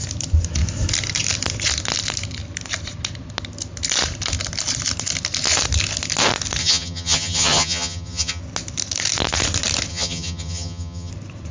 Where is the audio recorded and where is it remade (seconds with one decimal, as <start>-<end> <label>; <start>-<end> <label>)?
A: 0.0-6.6 recorded; 6.6-8.4 remade; 8.4-9.9 recorded; 9.9-11.1 remade; 11.1-11.5 recorded

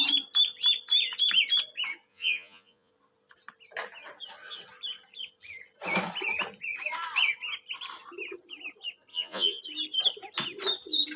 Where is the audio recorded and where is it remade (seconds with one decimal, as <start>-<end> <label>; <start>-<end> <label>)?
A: 0.0-2.1 recorded; 2.1-2.9 remade; 2.9-9.1 recorded; 9.1-9.6 remade; 9.6-11.2 recorded

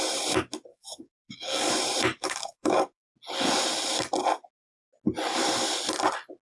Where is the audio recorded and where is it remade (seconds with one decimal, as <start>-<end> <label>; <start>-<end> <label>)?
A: 0.0-0.7 recorded; 0.7-1.7 remade; 1.7-2.1 recorded; 2.1-3.1 remade; 3.1-6.4 recorded

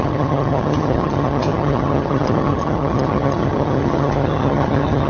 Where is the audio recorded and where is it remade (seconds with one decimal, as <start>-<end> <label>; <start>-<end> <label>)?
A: 0.0-5.1 remade

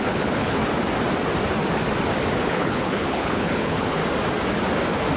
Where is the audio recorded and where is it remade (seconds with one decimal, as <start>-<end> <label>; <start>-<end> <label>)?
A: 0.0-0.6 remade; 0.6-2.4 recorded; 2.4-4.0 remade; 4.0-5.2 recorded

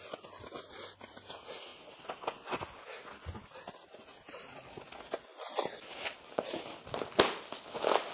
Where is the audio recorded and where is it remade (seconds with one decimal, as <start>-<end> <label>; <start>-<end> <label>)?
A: 0.0-8.1 recorded

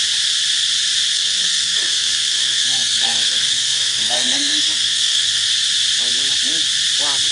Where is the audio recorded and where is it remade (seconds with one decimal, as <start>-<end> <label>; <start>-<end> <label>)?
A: 0.0-1.1 recorded; 1.1-5.5 remade; 5.5-7.3 recorded